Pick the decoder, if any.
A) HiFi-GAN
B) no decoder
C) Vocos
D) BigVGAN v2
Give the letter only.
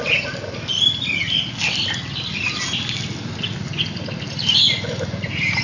B